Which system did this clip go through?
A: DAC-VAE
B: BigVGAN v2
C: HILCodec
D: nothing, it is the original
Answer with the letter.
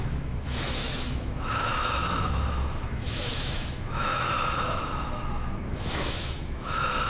A